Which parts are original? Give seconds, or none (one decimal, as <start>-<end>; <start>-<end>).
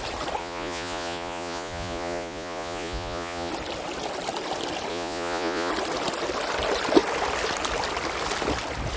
0.0-0.4; 3.5-4.9; 5.7-9.0